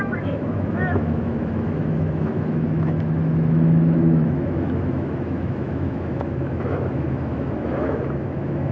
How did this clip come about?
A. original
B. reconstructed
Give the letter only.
B